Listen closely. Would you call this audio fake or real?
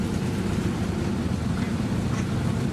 fake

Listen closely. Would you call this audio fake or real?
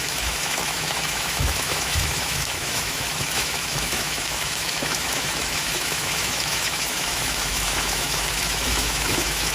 fake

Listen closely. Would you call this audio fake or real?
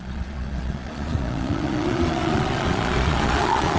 fake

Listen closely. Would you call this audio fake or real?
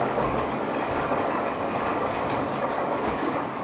fake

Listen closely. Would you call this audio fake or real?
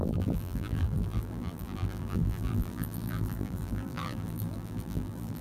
fake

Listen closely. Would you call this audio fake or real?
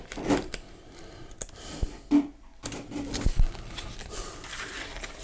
real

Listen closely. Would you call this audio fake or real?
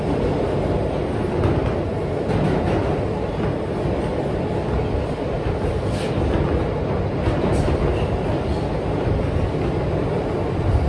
real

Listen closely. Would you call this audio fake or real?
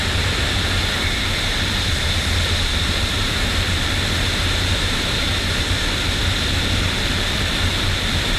fake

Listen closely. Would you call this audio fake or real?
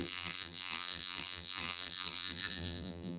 fake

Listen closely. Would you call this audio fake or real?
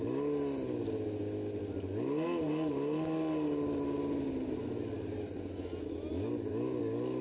real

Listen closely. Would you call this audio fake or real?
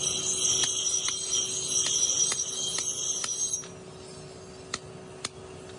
real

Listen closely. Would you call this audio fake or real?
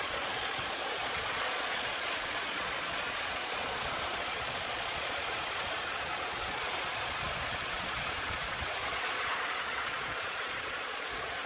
fake